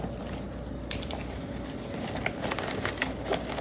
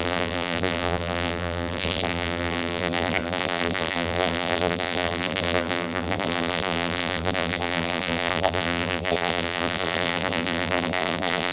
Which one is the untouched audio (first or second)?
first